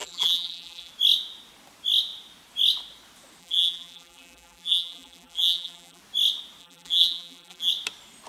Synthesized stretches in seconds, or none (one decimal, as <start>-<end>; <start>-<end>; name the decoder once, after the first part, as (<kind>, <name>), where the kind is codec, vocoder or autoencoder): 0.0-0.9 (vocoder, BigVGAN v2); 3.4-6.0; 6.6-7.7